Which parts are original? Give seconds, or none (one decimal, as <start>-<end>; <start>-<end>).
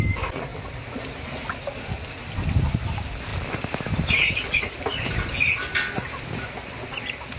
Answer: 0.0-7.4